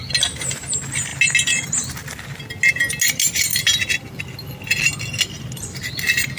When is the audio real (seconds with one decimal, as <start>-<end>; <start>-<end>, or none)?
0.0-6.4